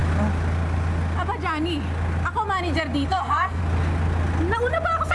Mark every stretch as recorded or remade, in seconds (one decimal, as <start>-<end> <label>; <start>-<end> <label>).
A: 0.0-3.1 recorded; 3.1-3.6 remade; 3.6-5.1 recorded